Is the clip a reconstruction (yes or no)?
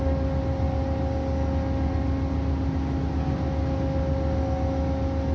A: no